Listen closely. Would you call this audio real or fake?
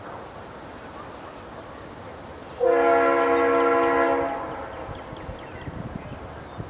real